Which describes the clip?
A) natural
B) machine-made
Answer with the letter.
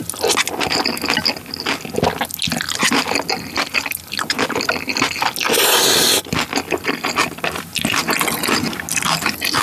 A